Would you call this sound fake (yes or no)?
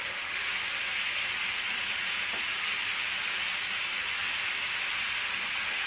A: no